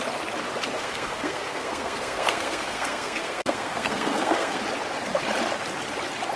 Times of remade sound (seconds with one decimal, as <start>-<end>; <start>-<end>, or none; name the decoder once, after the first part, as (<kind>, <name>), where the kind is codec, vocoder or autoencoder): 0.8-4.6 (codec, SNAC)